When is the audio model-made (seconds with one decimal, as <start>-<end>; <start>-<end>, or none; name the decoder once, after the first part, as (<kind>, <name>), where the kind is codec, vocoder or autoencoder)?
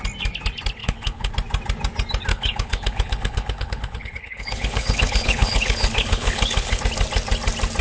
0.8-1.3 (codec, HILCodec); 2.3-6.8